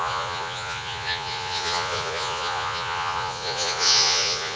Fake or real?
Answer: fake